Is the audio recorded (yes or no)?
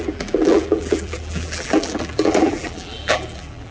no